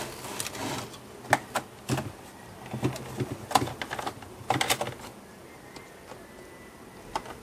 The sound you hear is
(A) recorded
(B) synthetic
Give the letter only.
A